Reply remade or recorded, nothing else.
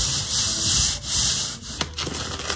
recorded